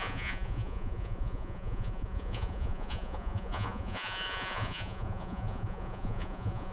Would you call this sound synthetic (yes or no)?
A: yes